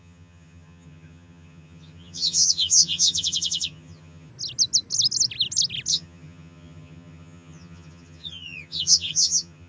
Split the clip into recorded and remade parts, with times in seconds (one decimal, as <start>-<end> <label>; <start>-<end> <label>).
0.0-4.3 remade; 4.3-5.9 recorded; 5.9-9.7 remade